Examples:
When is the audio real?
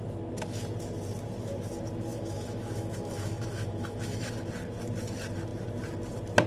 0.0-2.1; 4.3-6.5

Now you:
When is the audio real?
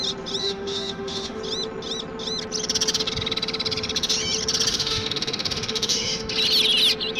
0.0-0.4; 1.4-4.7; 6.3-7.2